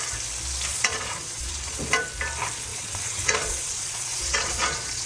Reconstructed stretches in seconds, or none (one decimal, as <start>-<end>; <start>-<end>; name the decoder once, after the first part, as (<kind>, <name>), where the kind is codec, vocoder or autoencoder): 0.7-1.8 (vocoder, Vocos); 2.7-5.1